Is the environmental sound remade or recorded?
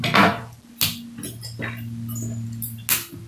recorded